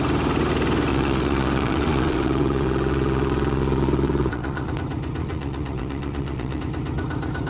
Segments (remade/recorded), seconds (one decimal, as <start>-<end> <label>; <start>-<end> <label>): 0.0-0.9 recorded; 0.9-4.7 remade; 4.7-5.2 recorded; 5.2-6.6 remade; 6.6-7.5 recorded

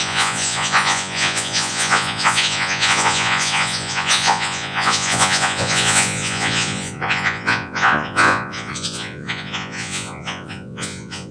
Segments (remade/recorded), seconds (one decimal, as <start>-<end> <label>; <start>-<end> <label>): 0.0-11.3 remade

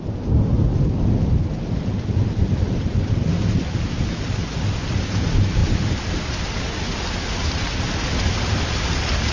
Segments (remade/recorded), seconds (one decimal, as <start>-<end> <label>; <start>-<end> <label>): 0.0-9.3 recorded

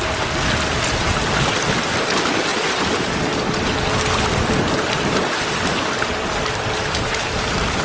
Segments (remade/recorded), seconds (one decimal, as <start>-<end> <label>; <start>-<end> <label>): 0.0-7.8 recorded

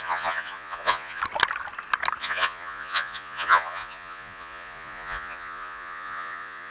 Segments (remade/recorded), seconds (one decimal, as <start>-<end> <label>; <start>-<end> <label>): 0.0-1.2 remade; 1.2-2.2 recorded; 2.2-6.7 remade